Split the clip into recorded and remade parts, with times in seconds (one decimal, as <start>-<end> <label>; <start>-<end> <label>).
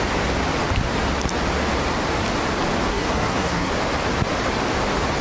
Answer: 0.0-2.9 recorded; 2.9-3.7 remade; 3.7-5.2 recorded